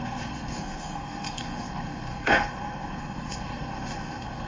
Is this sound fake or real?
fake